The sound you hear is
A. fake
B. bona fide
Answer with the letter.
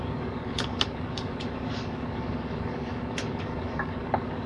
A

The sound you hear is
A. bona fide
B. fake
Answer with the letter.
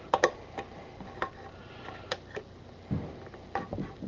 A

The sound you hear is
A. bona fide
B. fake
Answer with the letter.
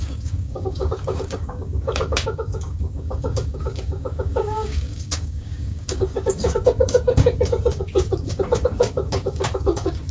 B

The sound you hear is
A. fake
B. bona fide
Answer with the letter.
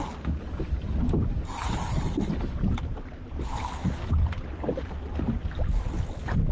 B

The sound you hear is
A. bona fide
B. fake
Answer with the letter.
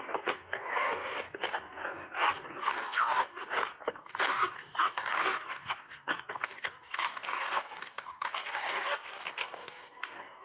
B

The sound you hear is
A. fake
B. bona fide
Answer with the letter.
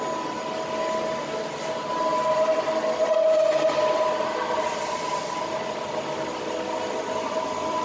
B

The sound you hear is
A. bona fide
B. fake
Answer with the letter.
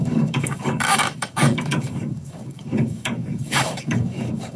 B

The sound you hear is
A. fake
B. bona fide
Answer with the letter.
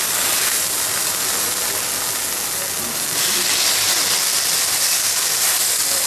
B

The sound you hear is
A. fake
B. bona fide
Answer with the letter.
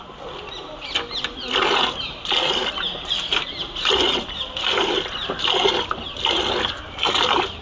B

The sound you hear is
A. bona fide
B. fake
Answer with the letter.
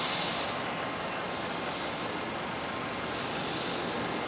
A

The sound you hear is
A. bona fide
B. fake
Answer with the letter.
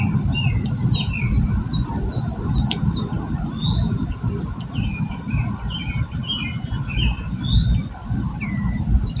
A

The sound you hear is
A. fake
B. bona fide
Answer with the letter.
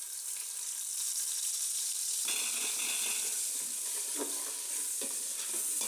B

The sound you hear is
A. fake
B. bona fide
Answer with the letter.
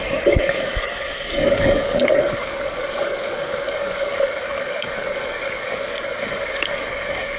A